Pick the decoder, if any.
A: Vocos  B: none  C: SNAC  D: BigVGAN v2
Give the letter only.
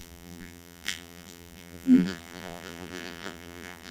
D